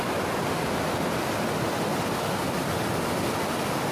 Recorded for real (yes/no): yes